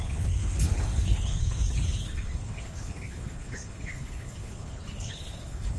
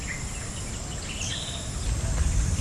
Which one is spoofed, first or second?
first